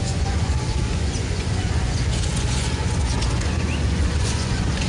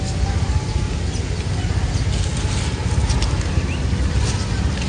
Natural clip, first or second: second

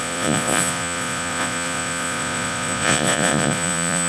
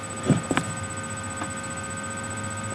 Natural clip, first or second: second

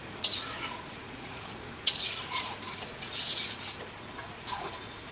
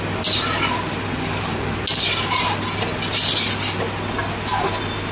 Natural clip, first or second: second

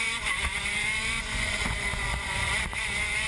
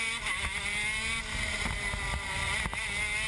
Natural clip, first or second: second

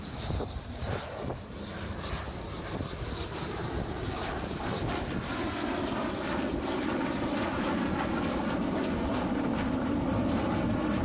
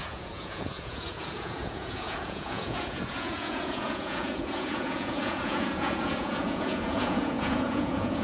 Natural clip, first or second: first